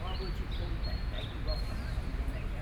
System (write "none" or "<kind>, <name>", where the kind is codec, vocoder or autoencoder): none